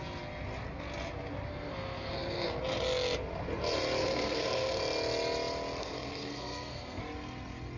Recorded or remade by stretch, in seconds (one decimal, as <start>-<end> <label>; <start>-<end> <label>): 0.0-1.5 recorded; 1.5-2.6 remade; 2.6-4.0 recorded; 4.0-4.8 remade; 4.8-5.8 recorded; 5.8-7.0 remade; 7.0-7.8 recorded